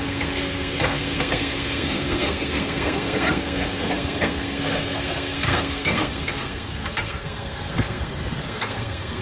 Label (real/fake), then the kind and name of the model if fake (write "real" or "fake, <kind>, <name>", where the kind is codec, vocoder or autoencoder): fake, codec, SNAC